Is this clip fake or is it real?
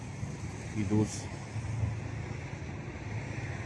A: real